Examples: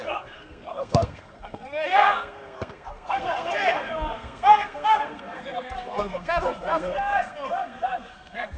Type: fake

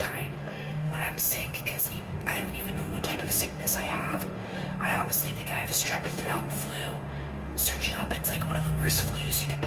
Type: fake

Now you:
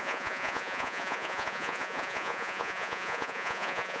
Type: fake